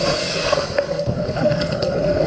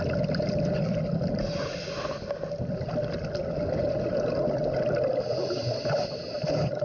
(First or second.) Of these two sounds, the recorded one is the second